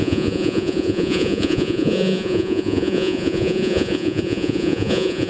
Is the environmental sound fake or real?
fake